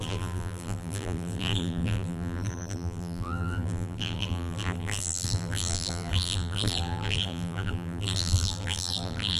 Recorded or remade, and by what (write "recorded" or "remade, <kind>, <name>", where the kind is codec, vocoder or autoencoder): remade, vocoder, BigVGAN v2